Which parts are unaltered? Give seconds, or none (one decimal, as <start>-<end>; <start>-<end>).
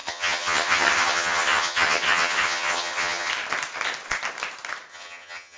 3.3-4.9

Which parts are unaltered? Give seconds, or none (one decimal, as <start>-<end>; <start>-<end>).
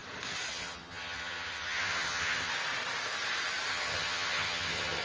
0.0-0.5; 2.5-3.7